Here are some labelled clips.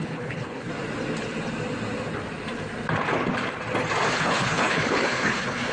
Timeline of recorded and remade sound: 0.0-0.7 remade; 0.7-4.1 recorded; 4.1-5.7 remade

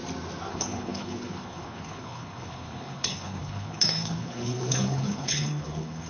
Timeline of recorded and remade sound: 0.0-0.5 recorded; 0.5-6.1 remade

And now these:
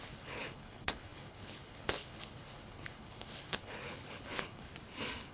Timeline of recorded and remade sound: 0.0-4.7 remade; 4.7-5.3 recorded

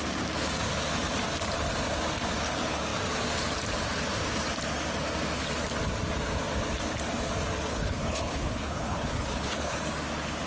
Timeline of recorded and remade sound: 0.0-7.7 recorded; 7.7-9.8 remade; 9.8-10.5 recorded